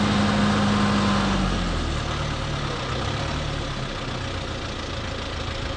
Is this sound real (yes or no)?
yes